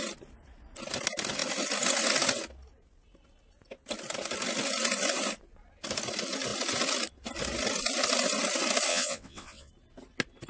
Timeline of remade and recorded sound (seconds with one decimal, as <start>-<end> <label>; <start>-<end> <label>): 0.0-8.9 recorded; 8.9-9.7 remade; 9.7-10.5 recorded